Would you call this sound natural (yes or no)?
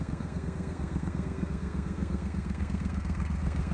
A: no